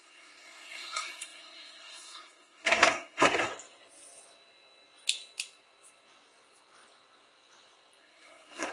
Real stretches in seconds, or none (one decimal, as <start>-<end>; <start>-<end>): 3.5-8.0